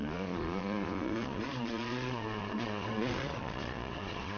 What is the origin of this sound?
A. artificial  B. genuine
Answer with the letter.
A